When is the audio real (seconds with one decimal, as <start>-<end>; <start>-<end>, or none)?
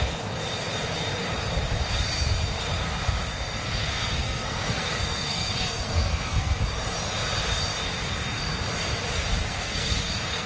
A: 0.0-3.3; 6.6-9.4